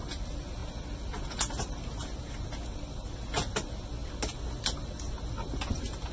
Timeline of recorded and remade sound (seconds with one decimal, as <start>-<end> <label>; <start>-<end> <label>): 0.0-6.1 recorded